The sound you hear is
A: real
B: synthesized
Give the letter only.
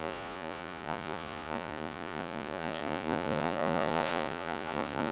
B